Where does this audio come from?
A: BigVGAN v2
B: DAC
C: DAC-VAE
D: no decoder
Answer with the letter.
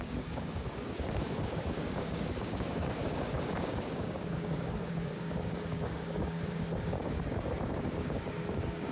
B